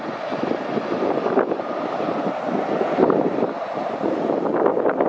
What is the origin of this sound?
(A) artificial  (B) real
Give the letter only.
A